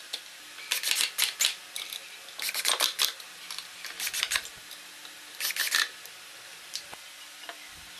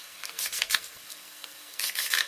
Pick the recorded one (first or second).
first